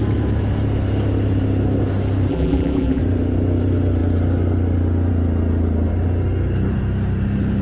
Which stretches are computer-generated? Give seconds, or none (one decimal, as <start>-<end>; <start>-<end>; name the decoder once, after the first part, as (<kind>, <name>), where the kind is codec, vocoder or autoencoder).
2.3-3.0 (vocoder, BigVGAN v2)